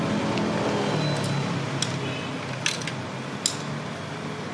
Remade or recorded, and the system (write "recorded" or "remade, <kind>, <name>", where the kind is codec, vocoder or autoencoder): recorded